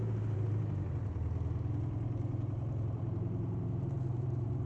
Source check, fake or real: fake